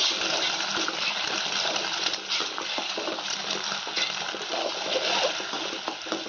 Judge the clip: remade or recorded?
recorded